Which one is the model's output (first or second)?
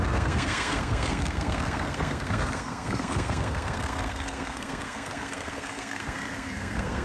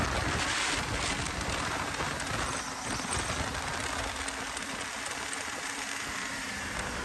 first